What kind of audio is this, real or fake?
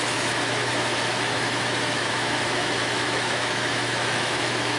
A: fake